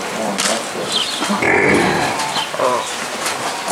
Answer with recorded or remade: recorded